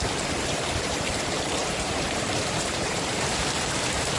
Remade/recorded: remade